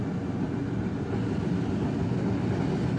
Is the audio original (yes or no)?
yes